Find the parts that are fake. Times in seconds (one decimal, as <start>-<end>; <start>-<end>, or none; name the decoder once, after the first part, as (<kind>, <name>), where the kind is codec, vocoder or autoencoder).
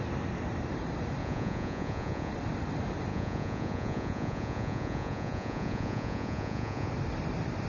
1.2-2.3 (vocoder, Vocos); 3.1-6.9